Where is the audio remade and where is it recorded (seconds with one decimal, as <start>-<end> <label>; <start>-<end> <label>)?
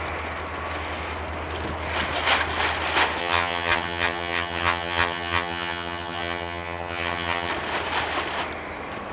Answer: 0.0-3.2 recorded; 3.2-7.5 remade; 7.5-9.1 recorded